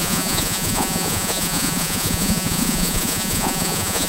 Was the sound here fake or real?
fake